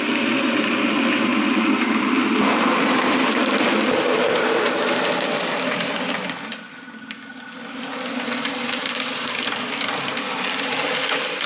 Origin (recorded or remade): recorded